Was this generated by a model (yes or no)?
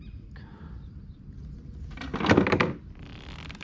no